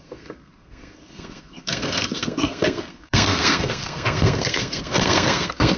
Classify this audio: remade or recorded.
remade